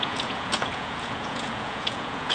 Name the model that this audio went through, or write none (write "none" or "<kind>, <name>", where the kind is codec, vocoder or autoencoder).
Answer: vocoder, Vocos